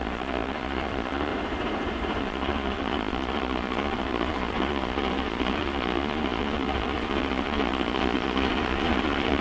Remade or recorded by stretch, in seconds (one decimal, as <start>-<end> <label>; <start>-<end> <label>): 0.0-1.3 remade; 1.3-2.2 recorded; 2.2-9.4 remade